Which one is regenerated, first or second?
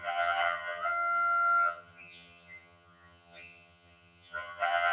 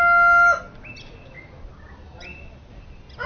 first